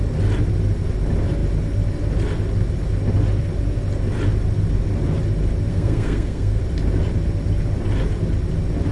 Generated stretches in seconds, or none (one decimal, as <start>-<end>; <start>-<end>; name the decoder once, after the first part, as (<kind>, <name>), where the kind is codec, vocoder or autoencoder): 5.7-6.6 (codec, SNAC)